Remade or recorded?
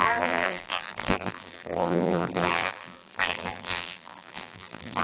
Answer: remade